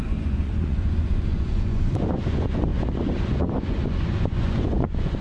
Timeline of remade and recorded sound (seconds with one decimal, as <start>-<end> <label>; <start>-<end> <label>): 0.0-5.2 remade